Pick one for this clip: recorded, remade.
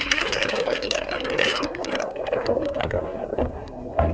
remade